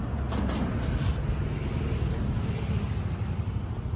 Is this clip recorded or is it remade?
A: recorded